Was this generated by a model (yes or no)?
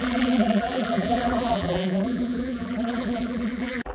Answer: yes